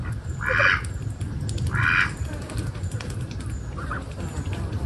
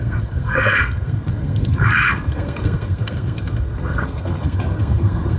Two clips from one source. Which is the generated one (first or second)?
second